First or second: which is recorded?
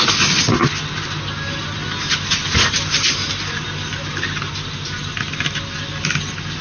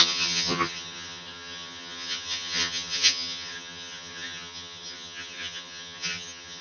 first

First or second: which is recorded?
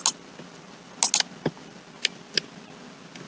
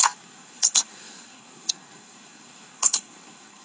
first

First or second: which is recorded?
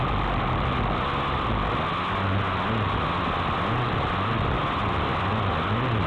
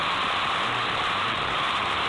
first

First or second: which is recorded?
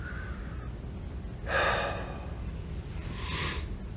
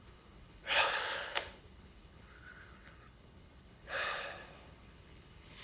first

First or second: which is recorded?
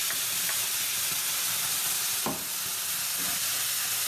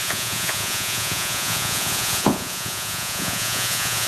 first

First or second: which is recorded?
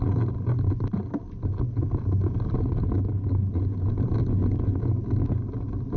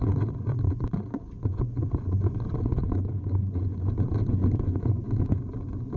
first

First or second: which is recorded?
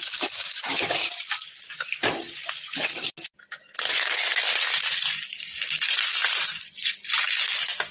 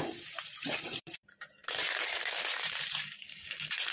first